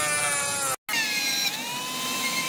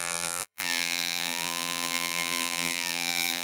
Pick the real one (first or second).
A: first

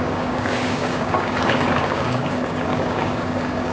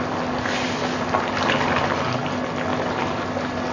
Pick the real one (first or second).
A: second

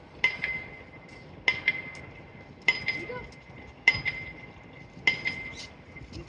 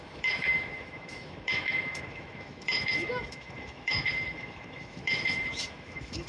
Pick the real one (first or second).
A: first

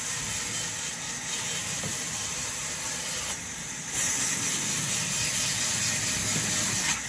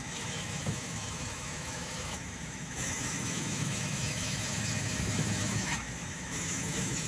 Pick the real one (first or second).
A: first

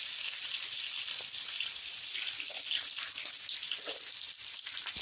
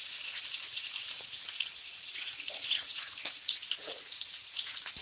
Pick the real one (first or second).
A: first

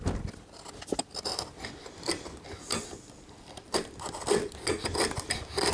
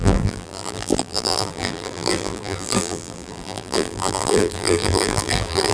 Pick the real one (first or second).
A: first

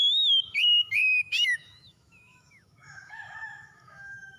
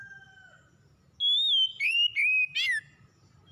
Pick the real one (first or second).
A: second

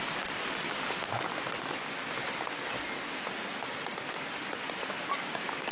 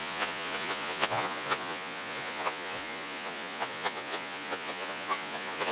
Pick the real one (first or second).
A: first